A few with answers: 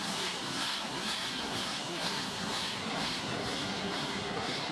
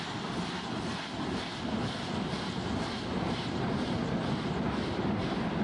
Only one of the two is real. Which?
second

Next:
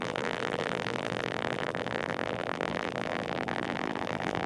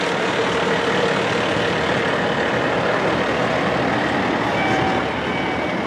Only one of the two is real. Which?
second